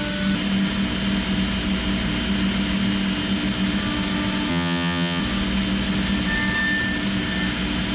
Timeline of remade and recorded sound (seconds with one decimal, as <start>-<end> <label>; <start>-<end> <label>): 0.0-4.5 recorded; 4.5-5.2 remade; 5.2-7.9 recorded